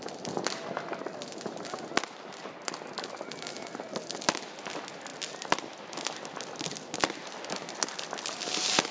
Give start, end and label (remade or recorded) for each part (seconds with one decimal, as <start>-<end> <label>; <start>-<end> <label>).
0.0-8.9 recorded